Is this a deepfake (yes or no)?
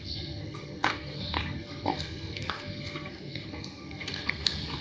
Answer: yes